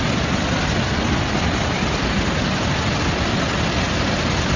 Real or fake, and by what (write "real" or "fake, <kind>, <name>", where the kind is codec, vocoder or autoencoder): real